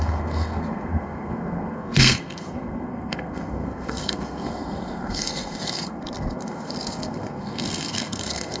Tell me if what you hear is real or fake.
fake